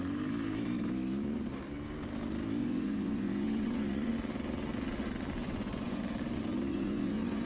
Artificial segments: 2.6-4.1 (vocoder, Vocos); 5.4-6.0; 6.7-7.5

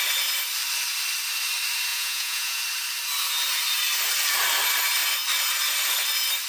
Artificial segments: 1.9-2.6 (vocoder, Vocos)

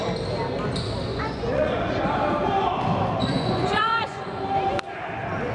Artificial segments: 1.1-1.9 (vocoder, Vocos); 3.2-4.3